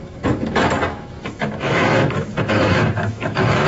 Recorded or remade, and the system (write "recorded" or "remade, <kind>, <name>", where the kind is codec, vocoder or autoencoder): remade, autoencoder, DAC-VAE